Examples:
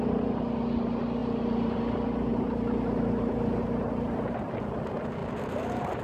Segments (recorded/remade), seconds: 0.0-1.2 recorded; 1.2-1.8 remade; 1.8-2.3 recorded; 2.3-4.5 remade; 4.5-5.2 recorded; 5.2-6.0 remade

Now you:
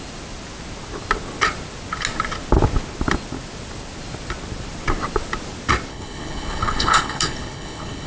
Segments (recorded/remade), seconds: 0.0-5.9 recorded; 5.9-8.1 remade

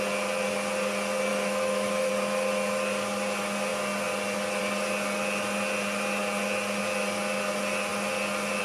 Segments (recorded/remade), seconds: 0.0-1.3 recorded; 1.3-2.1 remade; 2.1-8.6 recorded

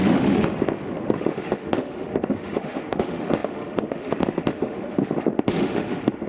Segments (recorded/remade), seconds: 0.0-6.3 remade

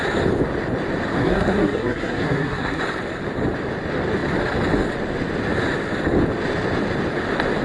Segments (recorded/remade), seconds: 0.0-1.1 recorded; 1.1-2.8 remade; 2.8-7.6 recorded

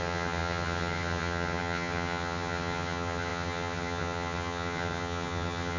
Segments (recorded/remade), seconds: 0.0-5.8 remade

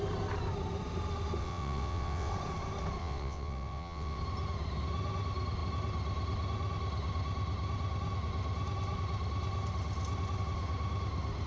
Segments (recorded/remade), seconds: 0.0-1.4 recorded; 1.4-2.3 remade; 2.3-3.0 recorded; 3.0-4.2 remade; 4.2-11.5 recorded

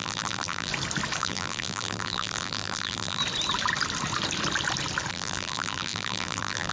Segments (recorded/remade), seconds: 0.0-0.7 remade; 0.7-1.2 recorded; 1.2-3.2 remade; 3.2-5.1 recorded; 5.1-6.7 remade